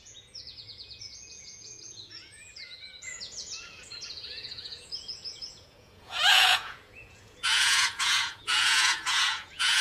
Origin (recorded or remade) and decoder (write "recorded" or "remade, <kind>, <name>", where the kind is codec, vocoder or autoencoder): remade, vocoder, Vocos